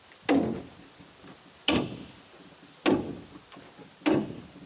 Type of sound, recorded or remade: recorded